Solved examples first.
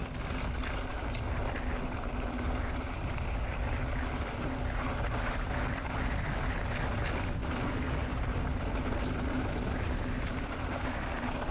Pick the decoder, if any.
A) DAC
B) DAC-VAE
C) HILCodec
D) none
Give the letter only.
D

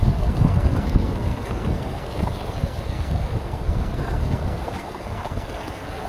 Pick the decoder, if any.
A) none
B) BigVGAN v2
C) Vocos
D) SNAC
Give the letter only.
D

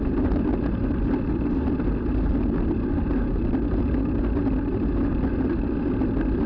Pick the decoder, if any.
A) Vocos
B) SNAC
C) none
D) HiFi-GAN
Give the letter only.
C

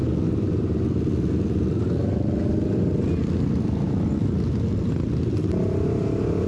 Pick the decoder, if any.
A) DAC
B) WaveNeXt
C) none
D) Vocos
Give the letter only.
C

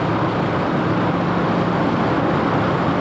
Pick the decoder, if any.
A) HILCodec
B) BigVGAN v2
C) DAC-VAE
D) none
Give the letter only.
D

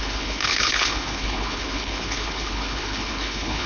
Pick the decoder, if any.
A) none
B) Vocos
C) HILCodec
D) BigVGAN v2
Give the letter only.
C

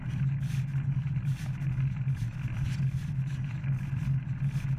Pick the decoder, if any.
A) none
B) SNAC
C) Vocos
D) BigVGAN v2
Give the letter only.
A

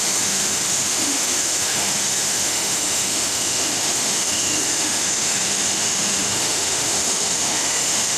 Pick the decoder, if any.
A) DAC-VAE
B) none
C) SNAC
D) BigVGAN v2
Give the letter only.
A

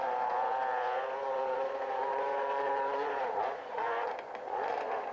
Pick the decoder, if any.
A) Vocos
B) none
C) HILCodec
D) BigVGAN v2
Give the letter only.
A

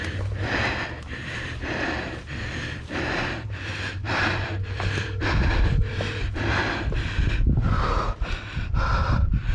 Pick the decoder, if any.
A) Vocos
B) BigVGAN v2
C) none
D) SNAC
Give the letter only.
B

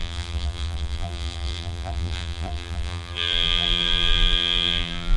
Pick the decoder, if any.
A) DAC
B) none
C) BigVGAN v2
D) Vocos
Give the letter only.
C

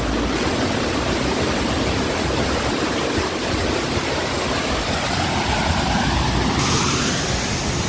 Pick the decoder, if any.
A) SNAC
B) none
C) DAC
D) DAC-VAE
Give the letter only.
B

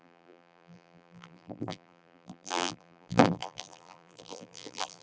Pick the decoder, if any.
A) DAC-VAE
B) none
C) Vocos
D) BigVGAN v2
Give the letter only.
D